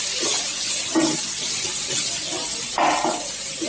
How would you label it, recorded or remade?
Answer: recorded